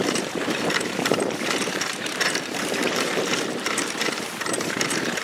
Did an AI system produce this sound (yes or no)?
yes